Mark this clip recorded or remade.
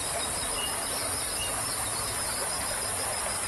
remade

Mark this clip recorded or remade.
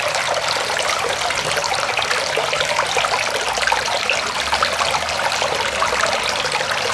recorded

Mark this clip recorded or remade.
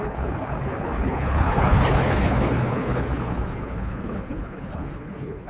remade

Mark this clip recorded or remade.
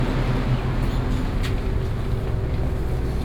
recorded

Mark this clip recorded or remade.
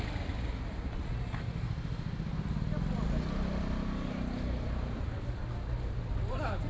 recorded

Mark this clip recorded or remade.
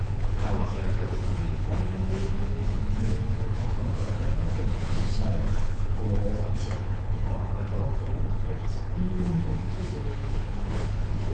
remade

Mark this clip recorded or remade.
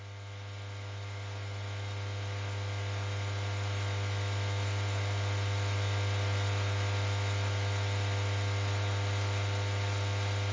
recorded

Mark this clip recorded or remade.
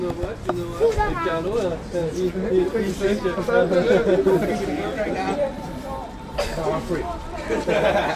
recorded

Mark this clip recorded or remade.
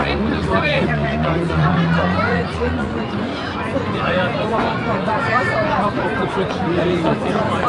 remade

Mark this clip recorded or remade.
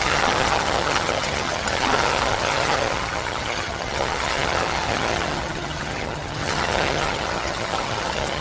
remade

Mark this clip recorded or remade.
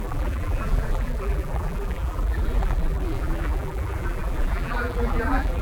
remade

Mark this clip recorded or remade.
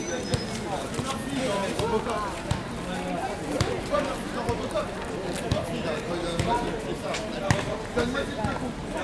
recorded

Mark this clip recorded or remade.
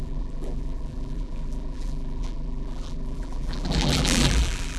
remade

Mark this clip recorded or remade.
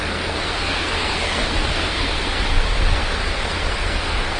remade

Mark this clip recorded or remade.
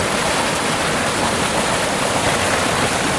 recorded